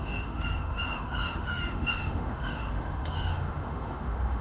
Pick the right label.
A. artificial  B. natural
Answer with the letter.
A